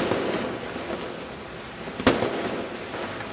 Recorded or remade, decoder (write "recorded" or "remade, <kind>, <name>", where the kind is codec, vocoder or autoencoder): recorded